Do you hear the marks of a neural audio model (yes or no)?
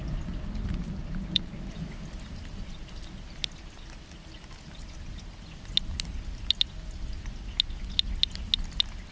no